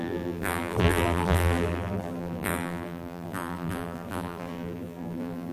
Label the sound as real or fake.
fake